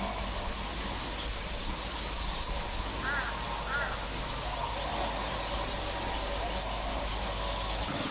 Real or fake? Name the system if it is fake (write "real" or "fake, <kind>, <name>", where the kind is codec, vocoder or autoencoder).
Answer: real